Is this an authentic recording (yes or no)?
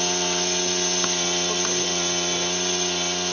yes